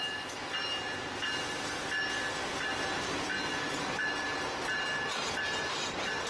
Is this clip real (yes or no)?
yes